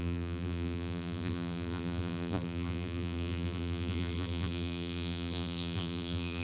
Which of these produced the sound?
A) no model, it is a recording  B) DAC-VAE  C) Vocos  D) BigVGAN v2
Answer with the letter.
D